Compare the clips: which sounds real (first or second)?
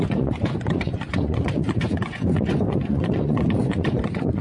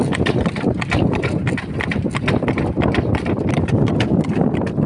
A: second